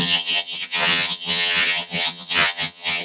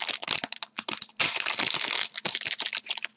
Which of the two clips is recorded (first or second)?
second